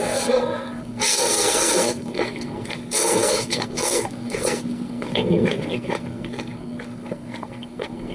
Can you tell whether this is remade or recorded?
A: remade